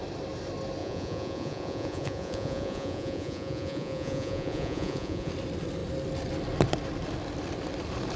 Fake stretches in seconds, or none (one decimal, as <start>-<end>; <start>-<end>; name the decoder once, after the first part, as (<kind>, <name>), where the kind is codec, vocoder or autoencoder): 0.8-5.3 (vocoder, Vocos)